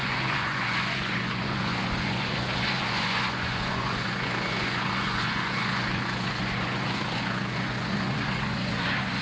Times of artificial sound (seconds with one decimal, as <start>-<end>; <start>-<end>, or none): 0.0-9.2